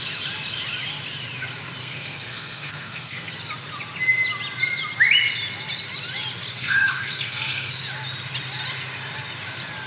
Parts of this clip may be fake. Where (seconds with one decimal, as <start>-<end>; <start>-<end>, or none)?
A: 1.8-3.3; 6.5-7.7